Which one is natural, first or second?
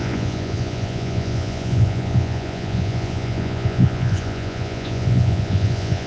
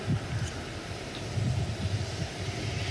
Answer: second